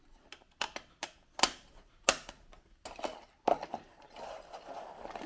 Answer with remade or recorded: recorded